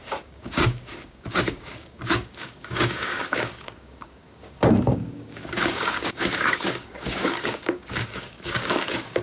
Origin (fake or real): fake